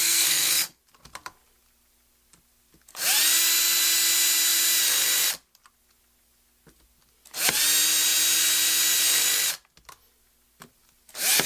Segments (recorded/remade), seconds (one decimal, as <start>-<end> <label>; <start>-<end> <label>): 0.0-0.8 remade; 0.8-11.5 recorded

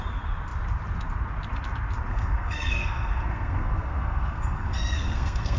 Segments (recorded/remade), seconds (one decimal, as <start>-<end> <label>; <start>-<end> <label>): 0.0-2.1 recorded; 2.1-5.6 remade

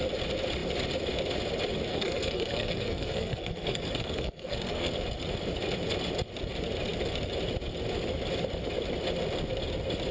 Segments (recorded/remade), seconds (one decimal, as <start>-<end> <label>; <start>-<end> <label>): 0.0-1.9 recorded; 1.9-4.9 remade; 4.9-10.1 recorded

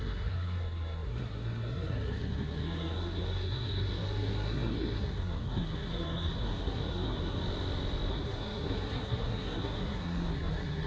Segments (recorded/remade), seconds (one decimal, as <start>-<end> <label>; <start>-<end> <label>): 0.0-7.4 remade; 7.4-8.1 recorded; 8.1-10.9 remade

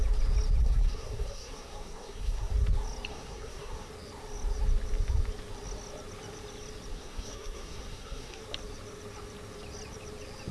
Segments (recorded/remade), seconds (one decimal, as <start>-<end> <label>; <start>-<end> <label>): 0.0-0.6 recorded; 0.6-2.5 remade; 2.5-3.1 recorded; 3.1-3.9 remade; 3.9-6.9 recorded; 6.9-8.4 remade; 8.4-10.5 recorded

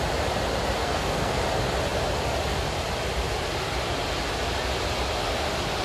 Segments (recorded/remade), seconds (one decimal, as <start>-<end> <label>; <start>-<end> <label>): 0.0-0.8 recorded; 0.8-1.4 remade; 1.4-5.8 recorded

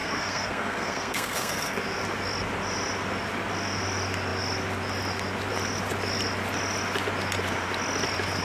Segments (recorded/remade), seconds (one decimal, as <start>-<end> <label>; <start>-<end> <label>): 0.0-1.8 remade; 1.8-8.4 recorded